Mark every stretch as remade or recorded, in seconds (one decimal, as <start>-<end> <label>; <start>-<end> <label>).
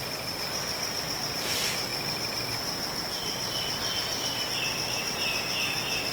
0.0-1.2 remade; 1.2-6.1 recorded